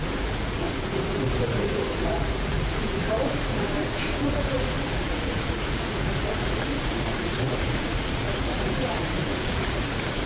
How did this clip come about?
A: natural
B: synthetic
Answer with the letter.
B